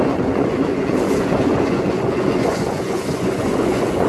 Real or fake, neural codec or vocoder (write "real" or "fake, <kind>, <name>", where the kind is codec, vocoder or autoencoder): fake, vocoder, Vocos